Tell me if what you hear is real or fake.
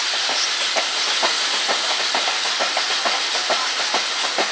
real